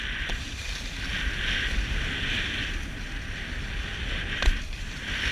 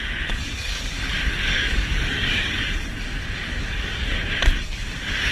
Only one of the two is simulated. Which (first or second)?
second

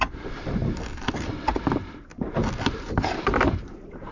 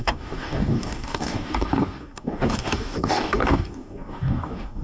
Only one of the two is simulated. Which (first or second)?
second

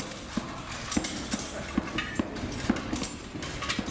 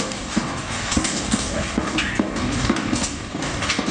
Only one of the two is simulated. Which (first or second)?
second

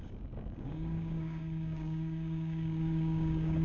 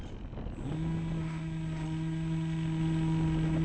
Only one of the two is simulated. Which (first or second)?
first